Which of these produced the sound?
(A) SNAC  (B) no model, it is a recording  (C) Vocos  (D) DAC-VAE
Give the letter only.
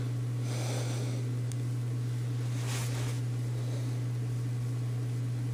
B